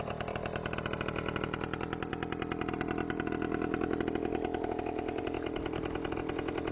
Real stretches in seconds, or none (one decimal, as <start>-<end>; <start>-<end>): 0.0-6.7